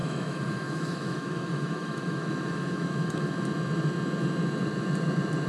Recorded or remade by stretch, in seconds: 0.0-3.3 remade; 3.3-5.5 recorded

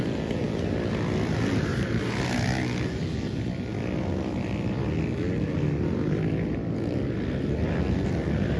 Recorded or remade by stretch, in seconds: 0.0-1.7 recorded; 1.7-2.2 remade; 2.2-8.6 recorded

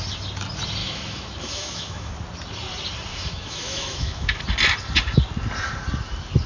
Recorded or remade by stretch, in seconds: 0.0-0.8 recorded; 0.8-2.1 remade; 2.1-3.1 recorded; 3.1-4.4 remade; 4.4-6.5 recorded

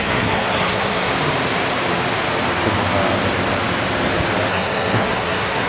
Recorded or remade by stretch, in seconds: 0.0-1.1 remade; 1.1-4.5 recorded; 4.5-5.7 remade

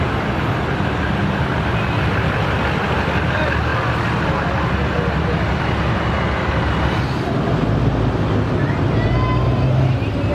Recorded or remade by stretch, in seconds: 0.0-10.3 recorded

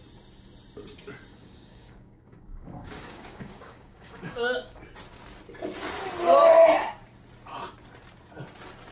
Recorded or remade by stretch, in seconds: 0.0-1.3 recorded; 1.3-4.8 remade; 4.8-8.9 recorded

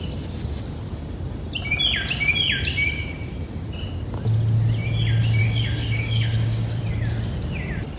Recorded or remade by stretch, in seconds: 0.0-5.4 recorded; 5.4-6.8 remade; 6.8-8.0 recorded

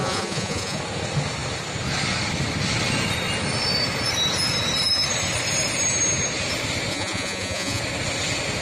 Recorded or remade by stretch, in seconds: 0.0-0.8 remade; 0.8-6.9 recorded; 6.9-7.8 remade; 7.8-8.6 recorded